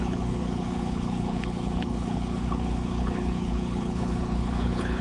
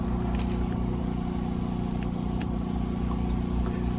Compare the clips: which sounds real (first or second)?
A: second